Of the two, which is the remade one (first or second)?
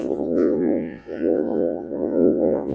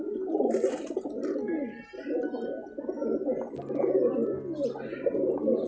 first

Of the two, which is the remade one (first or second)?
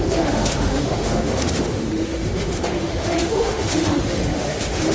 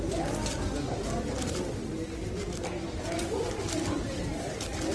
first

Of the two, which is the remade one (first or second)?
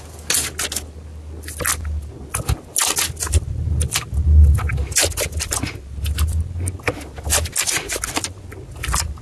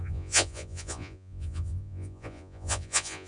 second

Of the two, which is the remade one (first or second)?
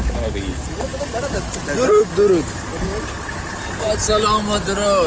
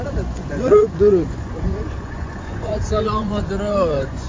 second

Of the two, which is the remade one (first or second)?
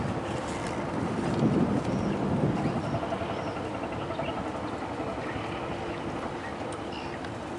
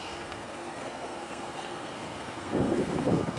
second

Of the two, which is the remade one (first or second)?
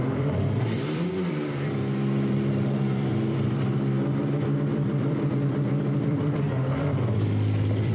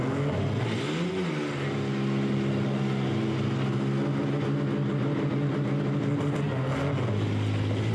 first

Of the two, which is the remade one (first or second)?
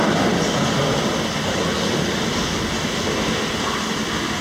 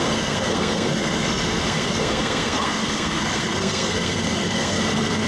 second